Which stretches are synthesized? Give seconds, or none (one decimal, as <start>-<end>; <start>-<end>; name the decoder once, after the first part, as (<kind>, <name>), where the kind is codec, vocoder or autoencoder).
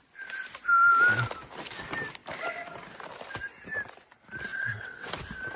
4.5-5.1 (vocoder, WaveNeXt)